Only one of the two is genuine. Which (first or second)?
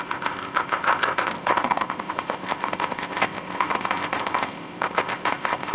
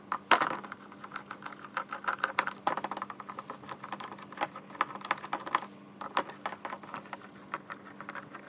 second